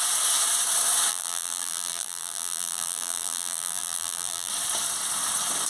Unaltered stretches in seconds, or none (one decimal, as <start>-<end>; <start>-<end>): 0.0-1.1; 4.5-5.7

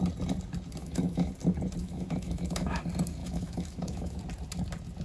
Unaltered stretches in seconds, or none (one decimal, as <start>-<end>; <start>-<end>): 0.0-0.8; 1.3-1.8; 2.8-3.2; 4.2-5.0

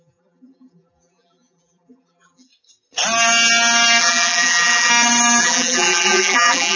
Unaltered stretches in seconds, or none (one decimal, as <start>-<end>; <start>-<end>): 2.5-4.0; 4.9-5.4